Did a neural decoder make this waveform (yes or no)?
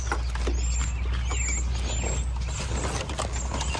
no